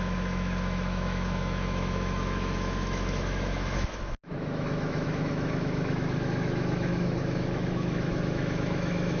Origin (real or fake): fake